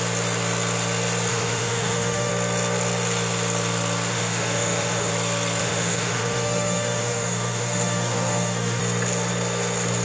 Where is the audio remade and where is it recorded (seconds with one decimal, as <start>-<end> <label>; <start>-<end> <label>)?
0.0-1.3 recorded; 1.3-2.3 remade; 2.3-4.1 recorded; 4.1-5.1 remade; 5.1-5.6 recorded; 5.6-8.8 remade; 8.8-10.0 recorded